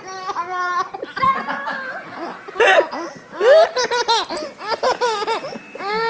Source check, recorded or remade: recorded